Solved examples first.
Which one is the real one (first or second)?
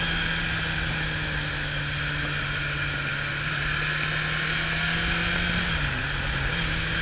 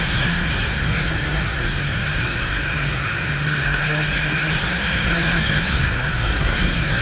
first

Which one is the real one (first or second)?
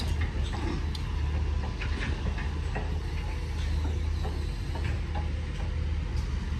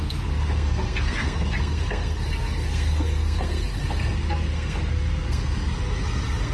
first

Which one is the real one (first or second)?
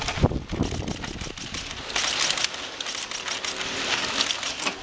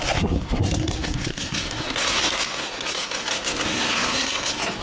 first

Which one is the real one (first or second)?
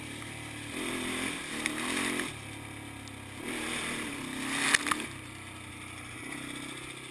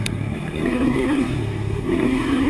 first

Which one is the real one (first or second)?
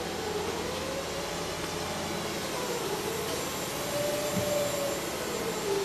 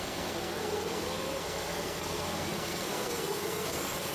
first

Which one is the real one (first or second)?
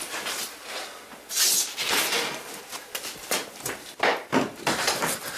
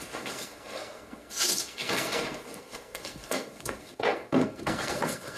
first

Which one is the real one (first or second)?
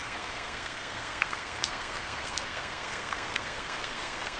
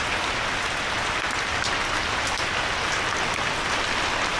second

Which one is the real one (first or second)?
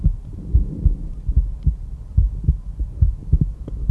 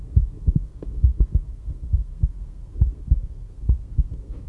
first